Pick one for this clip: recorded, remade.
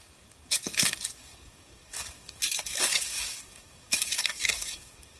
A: remade